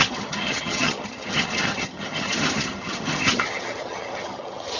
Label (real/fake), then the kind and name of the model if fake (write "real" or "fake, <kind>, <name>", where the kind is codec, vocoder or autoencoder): fake, vocoder, HiFi-GAN